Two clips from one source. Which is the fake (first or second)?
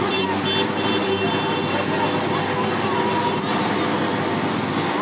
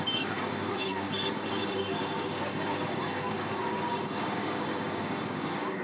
second